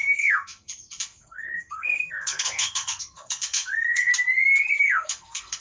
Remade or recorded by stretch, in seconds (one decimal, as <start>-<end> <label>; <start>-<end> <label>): 0.0-4.1 remade; 4.1-4.8 recorded; 4.8-5.6 remade